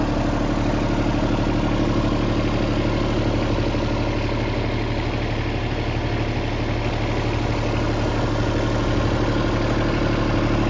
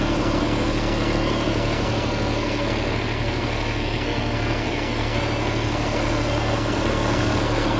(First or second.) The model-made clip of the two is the second